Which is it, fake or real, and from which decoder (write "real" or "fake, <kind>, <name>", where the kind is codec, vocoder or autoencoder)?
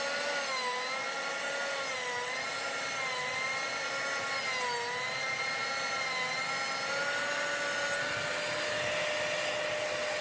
real